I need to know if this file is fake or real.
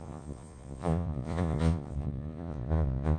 fake